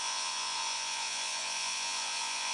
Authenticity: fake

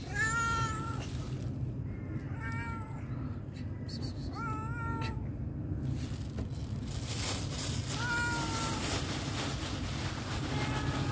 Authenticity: real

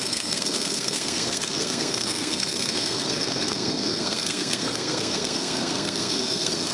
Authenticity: fake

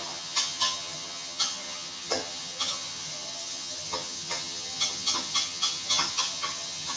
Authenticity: fake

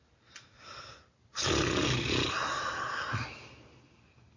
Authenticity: real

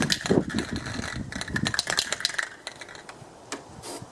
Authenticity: real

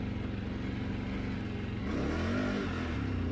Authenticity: real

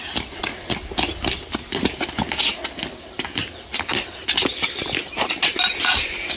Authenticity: real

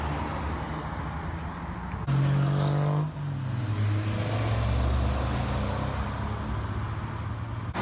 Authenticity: real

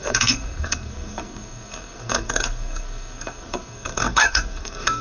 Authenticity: fake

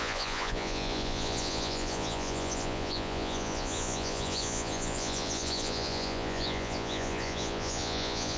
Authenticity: fake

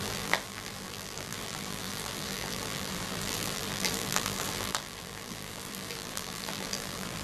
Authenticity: fake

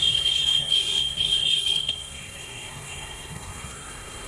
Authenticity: fake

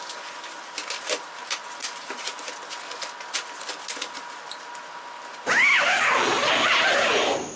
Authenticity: real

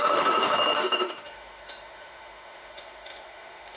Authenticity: fake